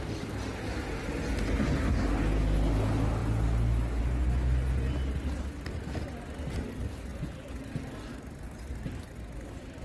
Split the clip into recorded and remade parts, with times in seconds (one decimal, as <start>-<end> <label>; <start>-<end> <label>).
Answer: 0.0-9.8 recorded